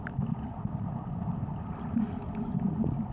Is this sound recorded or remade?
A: recorded